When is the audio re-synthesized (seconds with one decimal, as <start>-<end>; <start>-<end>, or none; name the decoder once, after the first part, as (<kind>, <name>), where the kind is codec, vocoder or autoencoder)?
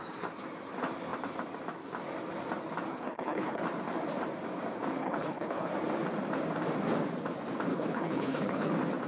2.9-3.6 (codec, HILCodec); 5.0-5.7; 7.7-8.7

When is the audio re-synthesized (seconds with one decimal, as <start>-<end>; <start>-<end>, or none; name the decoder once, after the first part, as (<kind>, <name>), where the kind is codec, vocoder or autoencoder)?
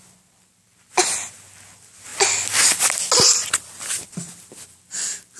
none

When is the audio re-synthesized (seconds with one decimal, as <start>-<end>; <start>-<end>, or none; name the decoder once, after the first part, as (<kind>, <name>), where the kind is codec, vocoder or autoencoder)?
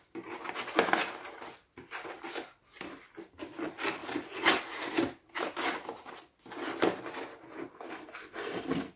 7.7-9.0 (codec, SNAC)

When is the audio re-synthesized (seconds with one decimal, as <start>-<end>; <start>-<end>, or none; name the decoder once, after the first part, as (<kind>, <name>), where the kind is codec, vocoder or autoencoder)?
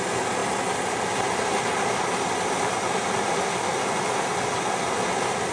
none